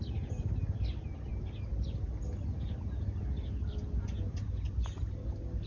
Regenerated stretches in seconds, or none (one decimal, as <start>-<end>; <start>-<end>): none